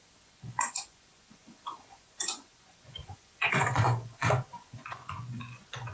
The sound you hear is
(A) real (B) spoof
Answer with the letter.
B